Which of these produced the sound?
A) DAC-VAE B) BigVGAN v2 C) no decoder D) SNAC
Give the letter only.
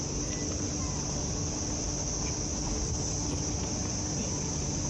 C